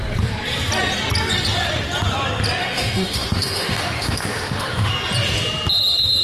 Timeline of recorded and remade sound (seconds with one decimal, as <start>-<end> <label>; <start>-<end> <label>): 0.0-2.6 recorded; 2.6-4.9 remade; 4.9-6.2 recorded